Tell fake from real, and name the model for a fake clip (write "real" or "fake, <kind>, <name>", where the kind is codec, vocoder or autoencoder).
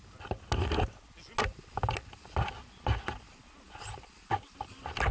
real